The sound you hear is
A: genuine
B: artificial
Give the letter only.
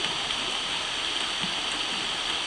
A